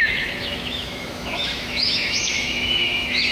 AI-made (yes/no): yes